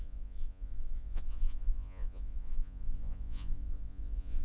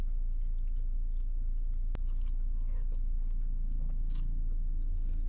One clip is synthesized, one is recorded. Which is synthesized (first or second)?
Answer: first